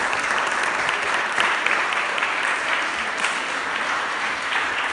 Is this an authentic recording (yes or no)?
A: no